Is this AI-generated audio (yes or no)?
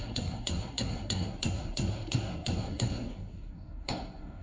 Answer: yes